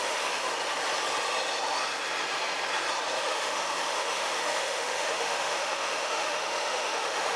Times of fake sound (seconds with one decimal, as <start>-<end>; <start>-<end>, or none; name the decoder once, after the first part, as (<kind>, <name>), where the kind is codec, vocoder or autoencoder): 0.0-0.5 (autoencoder, DAC-VAE); 3.2-7.4